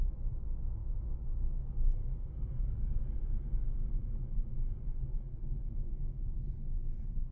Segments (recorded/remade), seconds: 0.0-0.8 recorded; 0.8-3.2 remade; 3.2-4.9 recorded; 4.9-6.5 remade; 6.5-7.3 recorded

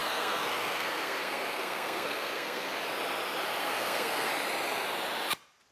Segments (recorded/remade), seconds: 0.0-2.7 remade; 2.7-3.6 recorded; 3.6-4.3 remade; 4.3-5.7 recorded

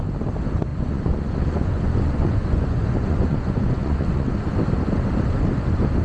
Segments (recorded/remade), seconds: 0.0-0.7 recorded; 0.7-4.3 remade; 4.3-6.0 recorded